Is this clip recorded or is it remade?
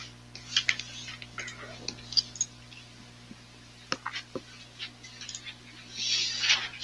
recorded